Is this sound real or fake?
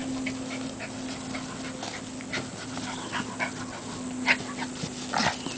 real